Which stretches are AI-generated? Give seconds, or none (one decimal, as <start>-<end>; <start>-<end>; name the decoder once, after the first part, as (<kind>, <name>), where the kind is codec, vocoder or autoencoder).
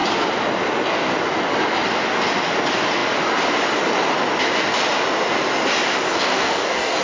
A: 6.1-7.0 (codec, DAC)